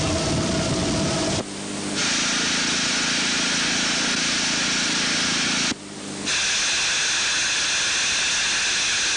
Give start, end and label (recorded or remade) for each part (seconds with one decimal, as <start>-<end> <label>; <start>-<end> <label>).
0.0-9.2 recorded